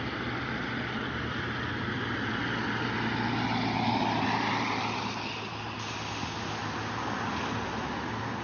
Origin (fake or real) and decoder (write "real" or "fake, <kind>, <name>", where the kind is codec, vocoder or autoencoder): real